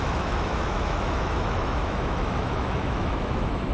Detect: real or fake fake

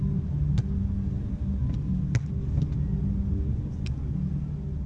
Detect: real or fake real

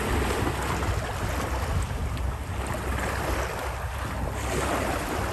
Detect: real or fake real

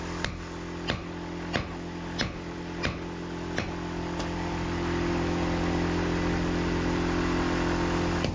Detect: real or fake real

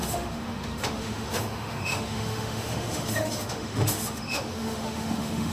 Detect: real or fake fake